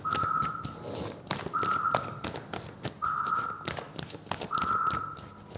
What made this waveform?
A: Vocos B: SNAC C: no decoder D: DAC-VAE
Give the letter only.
C